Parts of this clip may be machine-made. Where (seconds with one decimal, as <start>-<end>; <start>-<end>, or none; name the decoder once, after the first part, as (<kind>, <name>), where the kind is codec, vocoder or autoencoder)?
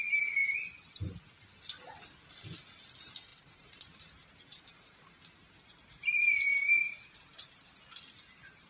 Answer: 3.3-7.5 (vocoder, BigVGAN v2)